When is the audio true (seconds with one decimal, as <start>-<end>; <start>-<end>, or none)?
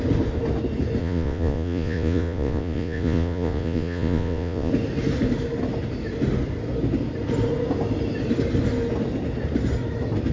0.0-1.0; 4.7-10.3